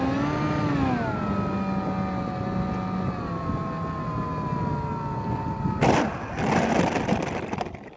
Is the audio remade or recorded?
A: recorded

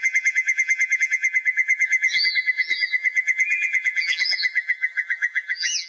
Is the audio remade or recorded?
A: remade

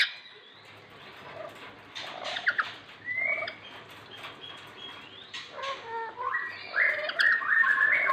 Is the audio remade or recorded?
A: recorded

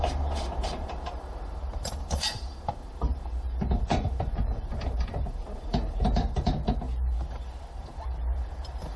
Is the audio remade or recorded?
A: remade